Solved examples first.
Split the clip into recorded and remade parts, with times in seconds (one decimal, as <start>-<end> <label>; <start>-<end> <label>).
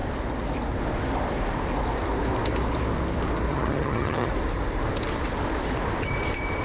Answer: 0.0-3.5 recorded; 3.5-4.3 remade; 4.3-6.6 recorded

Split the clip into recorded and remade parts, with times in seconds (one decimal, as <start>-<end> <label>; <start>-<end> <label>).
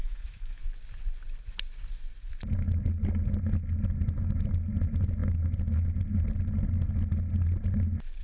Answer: 0.0-0.6 remade; 0.6-8.2 recorded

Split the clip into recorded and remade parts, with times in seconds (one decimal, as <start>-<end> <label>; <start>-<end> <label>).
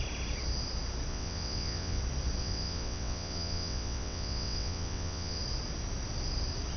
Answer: 0.0-1.1 recorded; 1.1-2.0 remade; 2.0-2.4 recorded; 2.4-5.4 remade; 5.4-6.8 recorded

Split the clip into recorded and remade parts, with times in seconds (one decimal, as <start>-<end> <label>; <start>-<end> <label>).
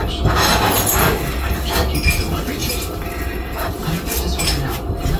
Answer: 0.0-2.6 recorded; 2.6-3.7 remade; 3.7-5.2 recorded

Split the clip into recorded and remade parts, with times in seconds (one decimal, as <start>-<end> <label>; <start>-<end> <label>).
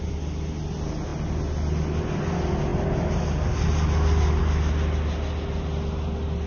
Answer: 0.0-6.5 recorded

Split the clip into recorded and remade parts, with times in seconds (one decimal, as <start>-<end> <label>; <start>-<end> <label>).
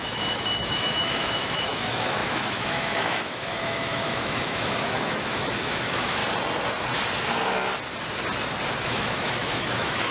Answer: 0.0-6.2 remade; 6.2-8.8 recorded; 8.8-10.1 remade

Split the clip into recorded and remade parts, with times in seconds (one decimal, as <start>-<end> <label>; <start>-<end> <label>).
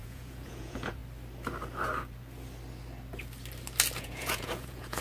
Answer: 0.0-1.0 remade; 1.0-4.0 recorded; 4.0-5.0 remade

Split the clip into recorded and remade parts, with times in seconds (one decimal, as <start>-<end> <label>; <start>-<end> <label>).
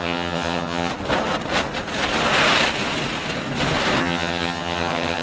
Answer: 0.0-0.9 remade; 0.9-4.0 recorded; 4.0-5.2 remade